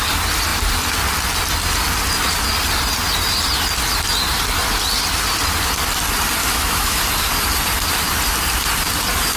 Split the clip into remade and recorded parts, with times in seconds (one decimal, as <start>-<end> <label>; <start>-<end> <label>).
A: 0.0-6.4 recorded; 6.4-7.0 remade; 7.0-9.4 recorded